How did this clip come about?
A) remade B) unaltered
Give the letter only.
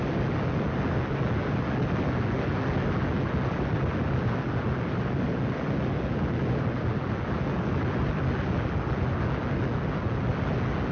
B